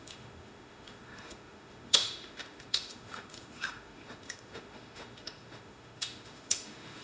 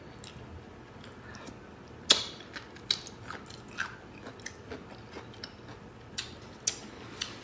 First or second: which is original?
second